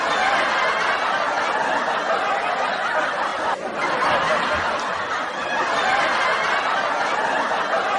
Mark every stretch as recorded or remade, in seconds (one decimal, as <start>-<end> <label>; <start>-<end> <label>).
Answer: 0.0-3.3 recorded; 3.3-6.0 remade; 6.0-8.0 recorded